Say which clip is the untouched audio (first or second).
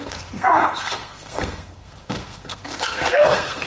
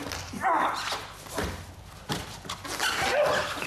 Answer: second